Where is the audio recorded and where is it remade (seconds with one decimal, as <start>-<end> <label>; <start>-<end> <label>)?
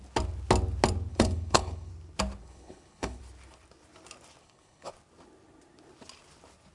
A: 0.0-1.1 recorded; 1.1-1.9 remade; 1.9-2.4 recorded; 2.4-3.2 remade; 3.2-4.4 recorded; 4.4-4.9 remade; 4.9-6.7 recorded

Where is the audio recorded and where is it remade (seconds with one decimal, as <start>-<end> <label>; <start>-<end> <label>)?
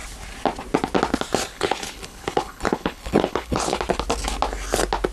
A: 0.0-1.5 recorded; 1.5-3.8 remade; 3.8-5.1 recorded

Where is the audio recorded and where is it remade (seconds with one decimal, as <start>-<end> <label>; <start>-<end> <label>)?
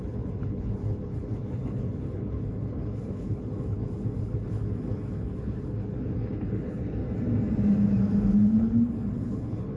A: 0.0-7.0 remade; 7.0-8.3 recorded; 8.3-9.8 remade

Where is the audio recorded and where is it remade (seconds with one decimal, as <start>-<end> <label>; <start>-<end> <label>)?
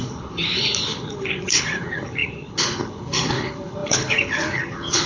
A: 0.0-5.1 remade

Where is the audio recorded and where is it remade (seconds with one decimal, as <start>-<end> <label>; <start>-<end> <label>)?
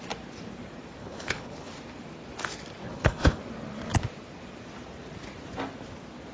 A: 0.0-1.0 recorded; 1.0-1.7 remade; 1.7-2.8 recorded; 2.8-3.4 remade; 3.4-6.3 recorded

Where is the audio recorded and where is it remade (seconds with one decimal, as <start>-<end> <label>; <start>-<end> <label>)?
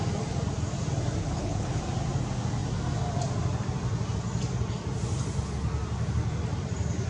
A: 0.0-1.2 recorded; 1.2-1.8 remade; 1.8-7.1 recorded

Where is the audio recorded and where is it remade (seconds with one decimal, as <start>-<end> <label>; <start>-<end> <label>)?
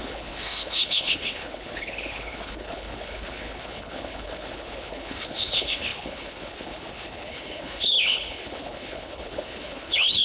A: 0.0-10.2 remade